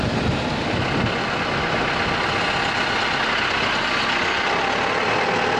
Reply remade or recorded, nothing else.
recorded